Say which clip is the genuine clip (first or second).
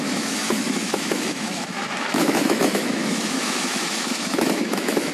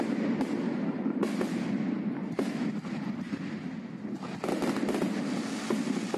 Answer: second